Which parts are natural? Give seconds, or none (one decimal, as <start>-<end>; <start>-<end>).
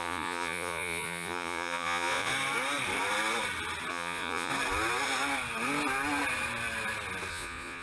2.3-3.9; 4.5-7.3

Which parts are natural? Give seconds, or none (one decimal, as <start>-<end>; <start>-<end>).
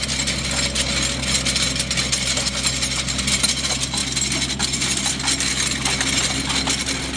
0.0-7.2